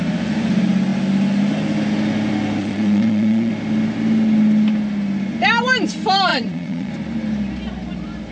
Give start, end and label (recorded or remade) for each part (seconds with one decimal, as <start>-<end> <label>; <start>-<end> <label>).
0.0-2.6 recorded; 2.6-3.5 remade; 3.5-6.3 recorded; 6.3-6.9 remade; 6.9-8.3 recorded